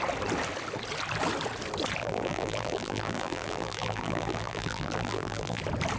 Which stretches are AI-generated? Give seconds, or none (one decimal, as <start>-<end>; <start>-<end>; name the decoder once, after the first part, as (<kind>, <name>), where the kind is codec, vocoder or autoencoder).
2.0-5.6 (vocoder, BigVGAN v2)